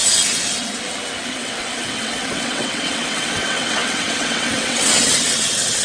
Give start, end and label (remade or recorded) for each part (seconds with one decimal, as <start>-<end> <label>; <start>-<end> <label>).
0.0-1.3 recorded; 1.3-5.8 remade